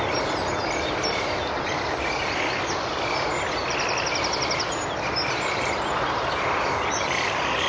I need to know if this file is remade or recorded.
recorded